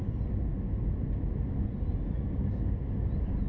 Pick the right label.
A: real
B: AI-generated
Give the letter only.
A